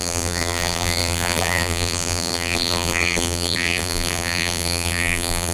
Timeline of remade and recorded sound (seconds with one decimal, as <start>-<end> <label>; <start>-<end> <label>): 0.0-5.5 remade